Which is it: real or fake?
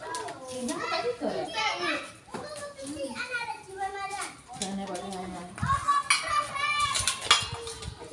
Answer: real